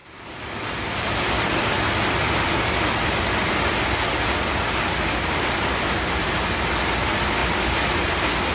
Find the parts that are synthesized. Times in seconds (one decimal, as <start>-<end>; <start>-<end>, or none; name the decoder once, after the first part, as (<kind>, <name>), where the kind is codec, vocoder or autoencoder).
0.0-2.5 (vocoder, BigVGAN v2)